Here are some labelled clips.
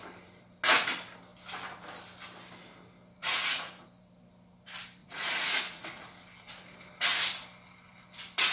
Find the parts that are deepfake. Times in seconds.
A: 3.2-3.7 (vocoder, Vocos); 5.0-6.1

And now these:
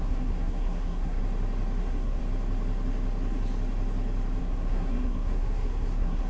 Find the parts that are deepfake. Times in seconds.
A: 0.0-1.2 (codec, SNAC); 1.8-2.2; 4.4-6.3